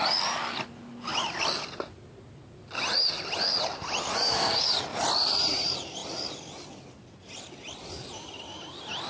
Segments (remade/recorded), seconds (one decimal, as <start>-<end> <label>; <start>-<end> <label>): 0.0-9.1 recorded